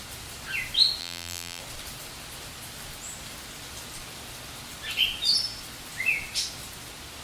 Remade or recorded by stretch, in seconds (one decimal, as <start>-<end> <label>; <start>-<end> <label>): 0.0-1.0 recorded; 1.0-1.6 remade; 1.6-7.2 recorded